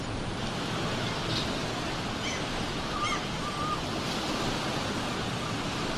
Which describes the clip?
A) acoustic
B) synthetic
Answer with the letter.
B